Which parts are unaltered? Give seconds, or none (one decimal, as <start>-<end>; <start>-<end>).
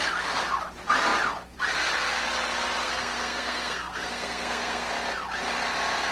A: 0.0-2.8; 4.9-6.1